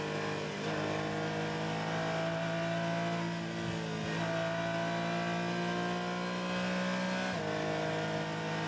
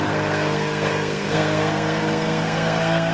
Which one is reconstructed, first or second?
second